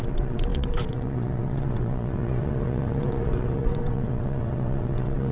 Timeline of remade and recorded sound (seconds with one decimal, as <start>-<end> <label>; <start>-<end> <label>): 0.0-5.3 remade